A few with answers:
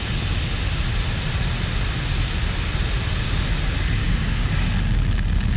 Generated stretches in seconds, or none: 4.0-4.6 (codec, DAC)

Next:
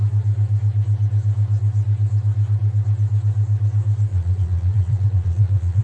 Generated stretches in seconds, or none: 4.1-5.8 (vocoder, Vocos)

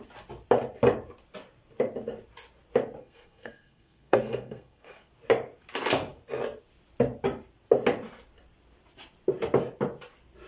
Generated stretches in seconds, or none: 3.0-5.1 (codec, SNAC)

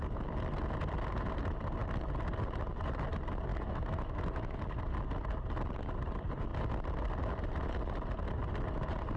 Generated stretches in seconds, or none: 3.5-4.6 (autoencoder, DAC-VAE)

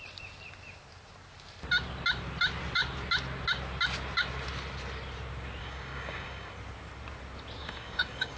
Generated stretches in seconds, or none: 5.6-6.5 (codec, DAC); 7.6-8.4

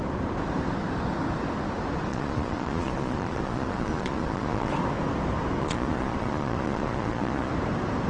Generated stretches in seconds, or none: 2.1-4.7 (vocoder, Vocos); 5.6-7.5

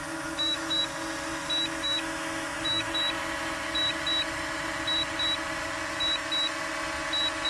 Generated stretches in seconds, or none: 0.0-0.8 (autoencoder, DAC-VAE); 1.8-2.9